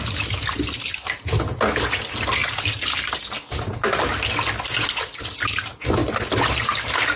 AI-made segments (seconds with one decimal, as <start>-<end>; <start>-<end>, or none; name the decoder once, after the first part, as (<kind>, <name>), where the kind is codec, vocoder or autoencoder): none